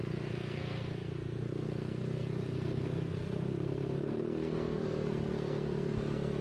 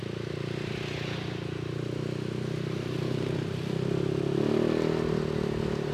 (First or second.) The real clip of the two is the second